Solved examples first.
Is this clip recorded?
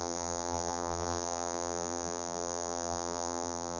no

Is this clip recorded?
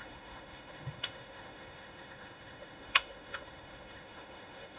no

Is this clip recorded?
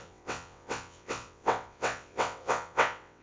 no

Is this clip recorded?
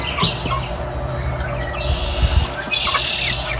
yes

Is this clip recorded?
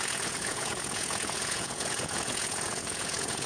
no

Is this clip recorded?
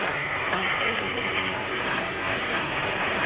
no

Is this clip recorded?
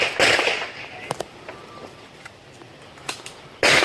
yes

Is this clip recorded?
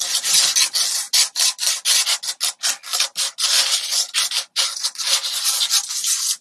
yes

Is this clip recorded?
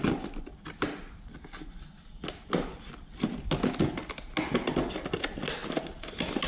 yes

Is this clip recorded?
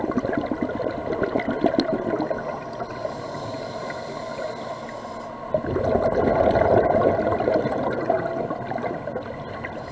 yes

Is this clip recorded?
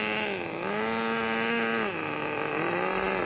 yes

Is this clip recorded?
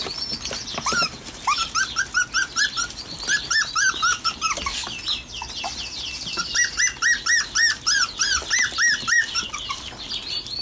yes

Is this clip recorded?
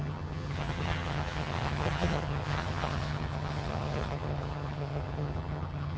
no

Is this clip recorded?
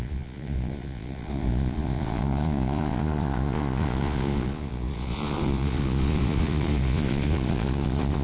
no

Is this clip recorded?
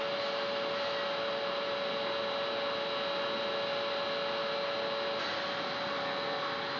yes